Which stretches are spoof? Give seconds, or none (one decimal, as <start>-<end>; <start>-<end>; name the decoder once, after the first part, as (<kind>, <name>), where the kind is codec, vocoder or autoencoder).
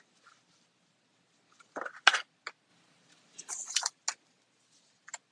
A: none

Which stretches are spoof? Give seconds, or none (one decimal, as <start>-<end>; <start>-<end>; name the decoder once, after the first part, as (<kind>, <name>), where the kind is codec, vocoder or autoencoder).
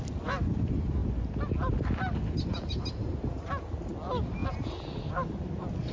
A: none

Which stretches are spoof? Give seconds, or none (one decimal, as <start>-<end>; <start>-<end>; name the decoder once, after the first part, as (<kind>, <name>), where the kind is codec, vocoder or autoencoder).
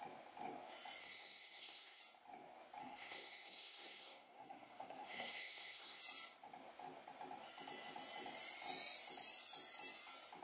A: 1.0-2.0 (codec, SNAC); 2.8-6.0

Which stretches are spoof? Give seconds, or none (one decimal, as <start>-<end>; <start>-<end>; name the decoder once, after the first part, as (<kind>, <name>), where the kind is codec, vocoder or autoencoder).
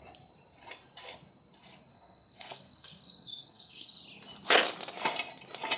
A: 1.9-4.0 (codec, SNAC)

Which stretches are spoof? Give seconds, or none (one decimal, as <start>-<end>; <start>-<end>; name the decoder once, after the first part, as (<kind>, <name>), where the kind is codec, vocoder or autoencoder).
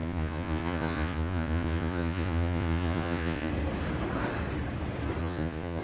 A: 0.0-3.5 (vocoder, Vocos); 5.2-5.8